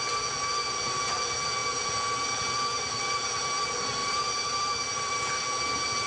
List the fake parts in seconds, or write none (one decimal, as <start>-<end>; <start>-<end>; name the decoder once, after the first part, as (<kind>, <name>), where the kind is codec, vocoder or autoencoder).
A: 4.0-5.4 (vocoder, BigVGAN v2)